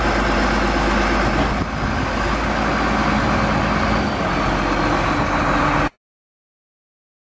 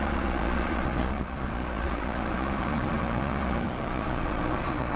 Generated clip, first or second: second